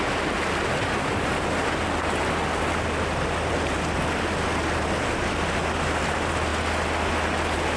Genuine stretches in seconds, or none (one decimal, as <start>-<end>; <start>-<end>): 0.0-7.8